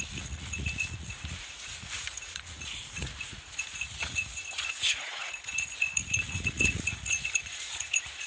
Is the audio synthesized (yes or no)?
yes